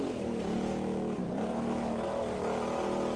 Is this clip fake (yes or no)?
no